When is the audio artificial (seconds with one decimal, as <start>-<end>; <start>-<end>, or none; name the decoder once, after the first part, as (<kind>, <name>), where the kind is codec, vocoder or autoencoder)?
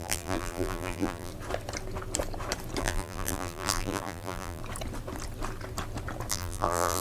0.0-1.3 (vocoder, BigVGAN v2); 2.8-4.6; 6.3-7.0